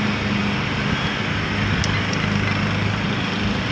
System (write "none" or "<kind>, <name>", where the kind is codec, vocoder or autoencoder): none